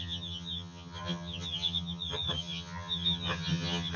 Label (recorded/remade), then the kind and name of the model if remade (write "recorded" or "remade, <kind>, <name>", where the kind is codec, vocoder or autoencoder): remade, vocoder, HiFi-GAN